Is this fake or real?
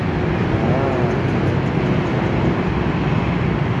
real